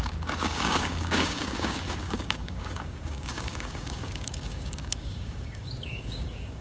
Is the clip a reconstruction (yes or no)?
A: yes